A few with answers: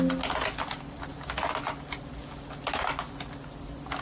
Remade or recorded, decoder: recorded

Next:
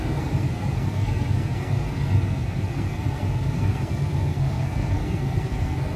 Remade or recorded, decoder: remade, codec, SNAC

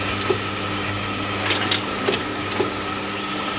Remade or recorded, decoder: recorded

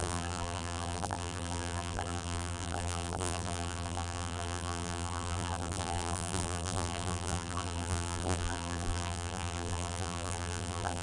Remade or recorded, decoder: remade, vocoder, BigVGAN v2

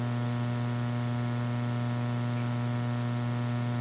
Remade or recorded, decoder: recorded